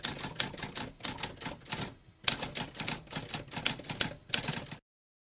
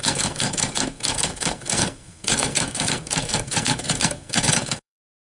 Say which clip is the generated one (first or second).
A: second